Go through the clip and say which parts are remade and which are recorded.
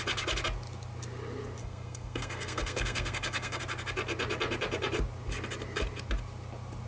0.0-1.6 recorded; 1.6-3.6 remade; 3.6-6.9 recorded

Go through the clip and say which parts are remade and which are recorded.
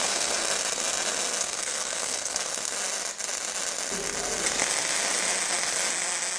0.0-0.4 remade; 0.4-1.4 recorded; 1.4-2.5 remade; 2.5-6.4 recorded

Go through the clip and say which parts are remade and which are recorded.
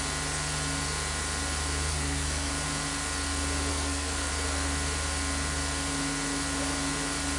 0.0-1.9 recorded; 1.9-2.5 remade; 2.5-3.7 recorded; 3.7-4.3 remade; 4.3-7.4 recorded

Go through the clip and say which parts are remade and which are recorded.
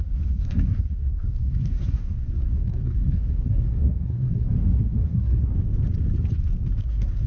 0.0-5.5 remade; 5.5-6.8 recorded; 6.8-7.3 remade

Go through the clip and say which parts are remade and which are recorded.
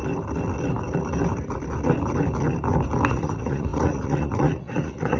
0.0-3.1 recorded; 3.1-5.2 remade